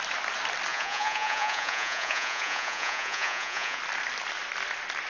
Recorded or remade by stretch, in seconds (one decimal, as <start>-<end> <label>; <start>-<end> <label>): 0.0-0.7 recorded; 0.7-3.8 remade; 3.8-5.1 recorded